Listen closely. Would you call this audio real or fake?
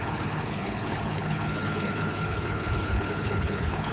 fake